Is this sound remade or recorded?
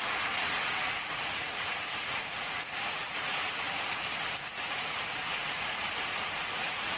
remade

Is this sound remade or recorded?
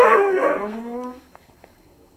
remade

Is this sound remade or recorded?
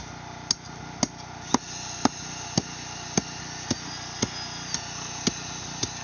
recorded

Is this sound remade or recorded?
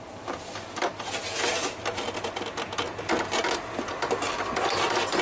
recorded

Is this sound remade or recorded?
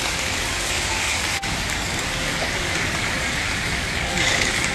remade